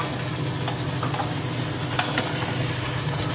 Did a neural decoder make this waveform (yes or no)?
no